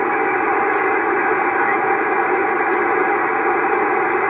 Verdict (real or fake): real